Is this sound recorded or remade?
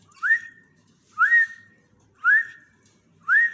remade